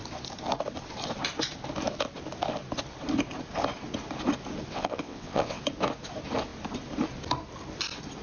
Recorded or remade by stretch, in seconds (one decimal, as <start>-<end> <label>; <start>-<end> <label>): 0.0-4.7 recorded; 4.7-5.6 remade; 5.6-8.2 recorded